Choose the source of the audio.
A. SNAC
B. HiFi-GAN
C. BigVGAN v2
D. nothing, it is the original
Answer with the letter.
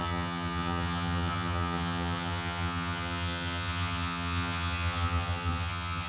B